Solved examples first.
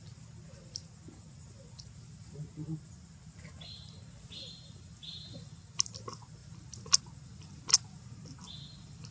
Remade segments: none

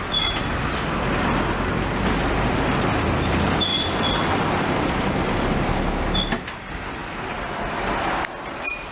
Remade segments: 3.7-5.7 (vocoder, BigVGAN v2)

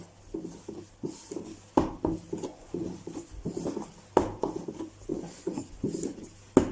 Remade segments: 2.5-3.4 (vocoder, Vocos); 5.1-5.8

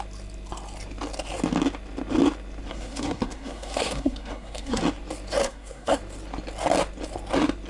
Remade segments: 2.7-4.8 (codec, SNAC); 5.4-6.0

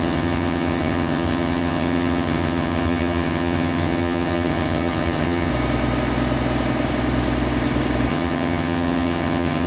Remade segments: 0.0-5.5 (vocoder, HiFi-GAN); 8.1-9.7

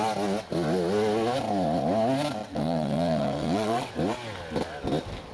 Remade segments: 2.4-3.9 (vocoder, WaveNeXt)

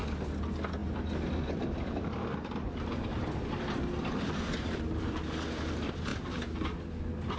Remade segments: 0.8-5.2 (vocoder, BigVGAN v2)